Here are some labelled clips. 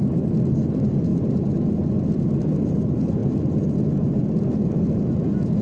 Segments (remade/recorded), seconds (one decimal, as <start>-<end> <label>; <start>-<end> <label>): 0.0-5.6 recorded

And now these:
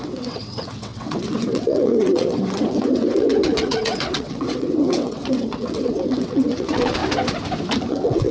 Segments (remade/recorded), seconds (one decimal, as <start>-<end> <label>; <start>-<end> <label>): 0.0-7.0 remade; 7.0-7.9 recorded; 7.9-8.3 remade

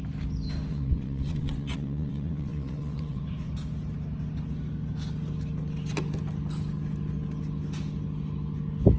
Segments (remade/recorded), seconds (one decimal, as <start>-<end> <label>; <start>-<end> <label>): 0.0-0.7 recorded; 0.7-3.2 remade; 3.2-9.0 recorded

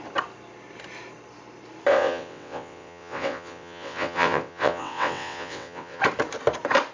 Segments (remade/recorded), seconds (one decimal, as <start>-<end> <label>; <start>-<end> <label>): 0.0-1.9 recorded; 1.9-6.0 remade; 6.0-6.9 recorded